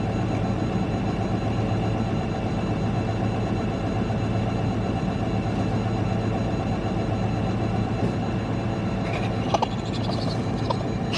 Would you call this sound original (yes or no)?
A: yes